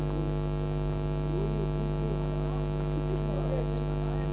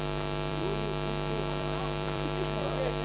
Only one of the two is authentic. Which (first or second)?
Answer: first